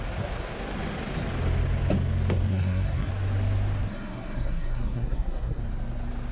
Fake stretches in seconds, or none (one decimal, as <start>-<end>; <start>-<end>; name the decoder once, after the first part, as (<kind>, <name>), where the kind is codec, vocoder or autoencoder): 2.5-3.1 (codec, SNAC); 3.9-5.6